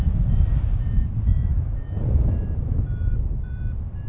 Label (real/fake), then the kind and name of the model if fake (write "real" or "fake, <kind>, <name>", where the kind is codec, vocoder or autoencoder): real